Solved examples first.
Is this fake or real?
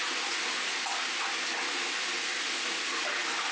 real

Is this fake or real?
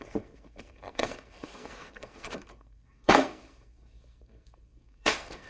fake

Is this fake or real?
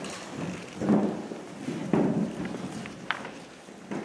real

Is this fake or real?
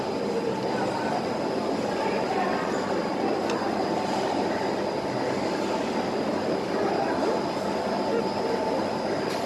real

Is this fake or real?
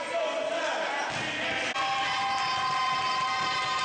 real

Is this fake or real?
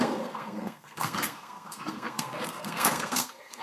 fake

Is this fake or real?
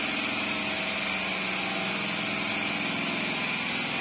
real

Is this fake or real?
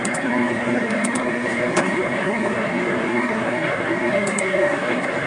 fake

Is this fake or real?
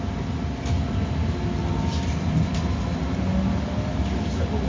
real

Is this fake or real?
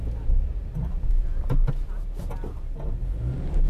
real